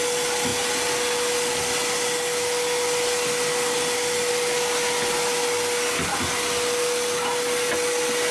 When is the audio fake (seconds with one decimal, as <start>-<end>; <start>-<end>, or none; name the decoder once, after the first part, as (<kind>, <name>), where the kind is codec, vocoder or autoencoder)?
none